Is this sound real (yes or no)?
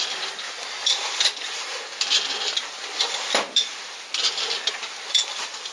yes